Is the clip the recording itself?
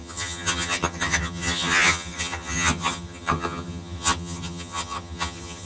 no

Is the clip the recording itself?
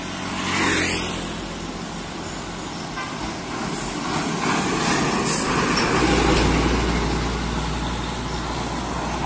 yes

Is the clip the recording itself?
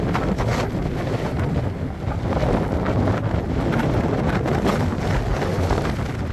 yes